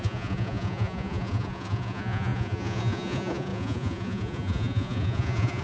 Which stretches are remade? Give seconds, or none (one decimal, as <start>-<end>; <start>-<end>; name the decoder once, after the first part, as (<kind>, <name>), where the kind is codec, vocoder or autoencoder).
0.0-5.6 (vocoder, Vocos)